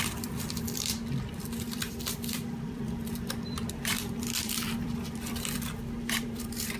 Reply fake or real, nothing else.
fake